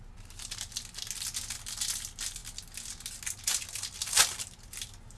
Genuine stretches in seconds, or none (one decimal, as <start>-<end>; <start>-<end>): 0.0-5.2